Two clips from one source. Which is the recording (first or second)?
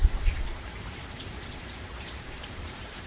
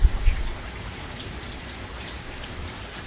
second